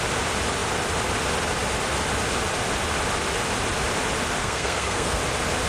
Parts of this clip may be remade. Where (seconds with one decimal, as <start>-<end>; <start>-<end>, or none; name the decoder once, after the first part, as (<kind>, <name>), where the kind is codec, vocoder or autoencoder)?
4.4-5.2 (codec, SNAC)